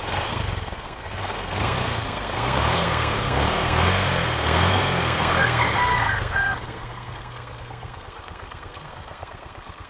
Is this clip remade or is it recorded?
remade